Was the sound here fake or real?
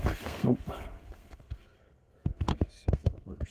fake